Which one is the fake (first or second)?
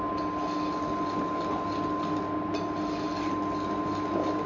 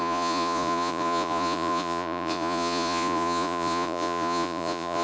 second